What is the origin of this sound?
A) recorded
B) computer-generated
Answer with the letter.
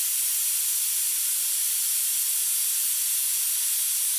A